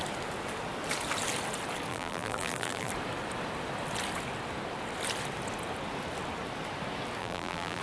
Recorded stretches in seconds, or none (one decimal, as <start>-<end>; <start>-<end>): 0.0-1.9; 2.9-7.2